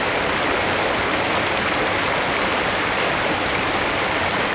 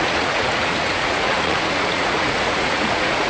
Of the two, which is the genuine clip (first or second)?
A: first